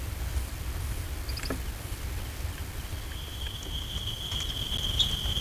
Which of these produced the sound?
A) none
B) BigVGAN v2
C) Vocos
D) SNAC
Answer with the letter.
A